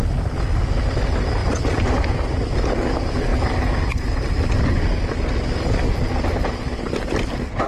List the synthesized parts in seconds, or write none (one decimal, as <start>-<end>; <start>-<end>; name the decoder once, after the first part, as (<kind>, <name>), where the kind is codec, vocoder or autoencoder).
none